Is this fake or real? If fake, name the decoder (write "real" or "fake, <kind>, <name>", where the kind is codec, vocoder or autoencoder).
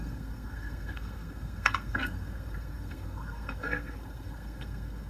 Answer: fake, codec, SNAC